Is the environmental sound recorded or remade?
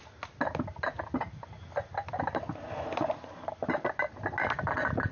recorded